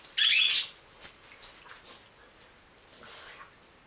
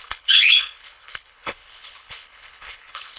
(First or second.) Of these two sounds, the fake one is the second